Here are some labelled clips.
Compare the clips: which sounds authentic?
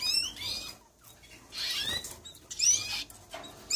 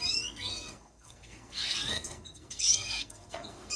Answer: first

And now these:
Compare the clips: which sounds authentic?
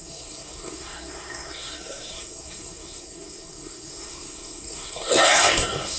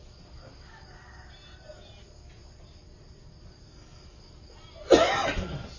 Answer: second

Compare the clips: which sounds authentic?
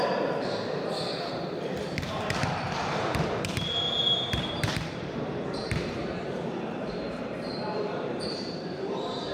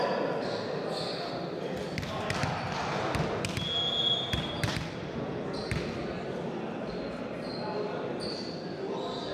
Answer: second